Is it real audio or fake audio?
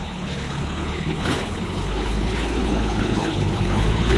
fake